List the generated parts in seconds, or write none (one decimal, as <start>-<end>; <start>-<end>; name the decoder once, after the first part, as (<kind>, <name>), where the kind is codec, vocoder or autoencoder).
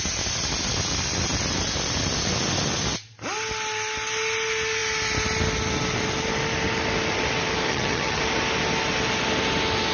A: 7.7-8.2 (vocoder, HiFi-GAN)